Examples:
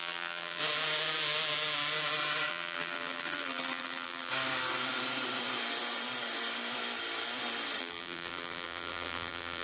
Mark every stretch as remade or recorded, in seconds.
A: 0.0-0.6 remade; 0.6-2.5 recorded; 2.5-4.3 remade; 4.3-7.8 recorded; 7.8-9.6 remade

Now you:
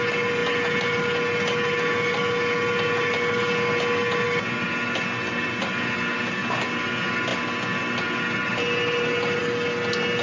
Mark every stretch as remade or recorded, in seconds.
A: 0.0-10.2 recorded

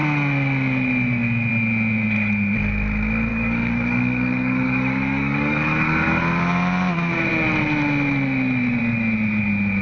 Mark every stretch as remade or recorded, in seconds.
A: 0.0-3.3 recorded; 3.3-6.2 remade; 6.2-9.8 recorded